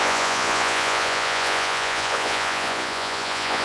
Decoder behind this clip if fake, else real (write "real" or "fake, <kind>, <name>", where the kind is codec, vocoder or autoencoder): fake, vocoder, Vocos